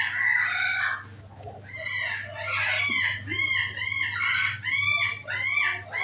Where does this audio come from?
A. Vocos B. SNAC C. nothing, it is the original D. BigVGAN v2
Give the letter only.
C